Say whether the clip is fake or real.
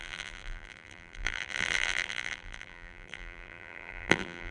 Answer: fake